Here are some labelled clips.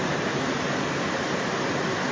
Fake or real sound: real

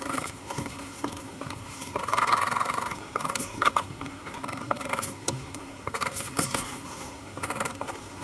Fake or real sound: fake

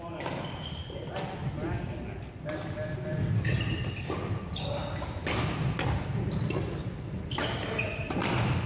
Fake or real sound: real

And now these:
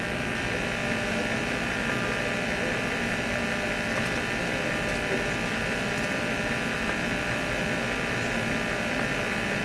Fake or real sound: real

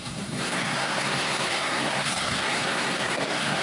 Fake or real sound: fake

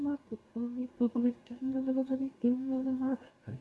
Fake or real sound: fake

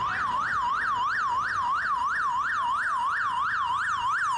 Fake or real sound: real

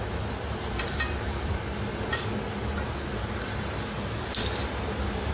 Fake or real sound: real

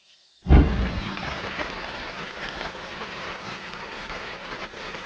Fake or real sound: fake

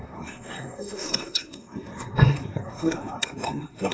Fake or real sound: fake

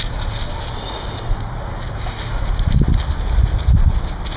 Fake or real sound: real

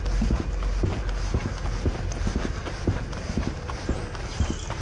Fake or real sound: real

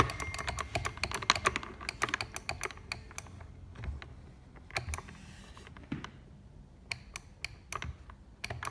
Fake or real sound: real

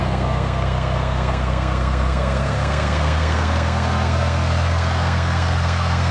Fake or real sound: fake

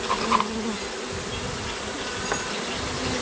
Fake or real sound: real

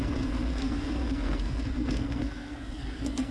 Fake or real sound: fake